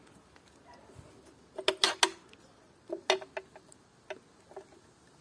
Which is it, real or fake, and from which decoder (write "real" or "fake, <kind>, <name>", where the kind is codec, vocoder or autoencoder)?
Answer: real